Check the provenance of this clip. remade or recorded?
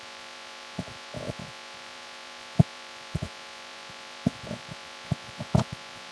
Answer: remade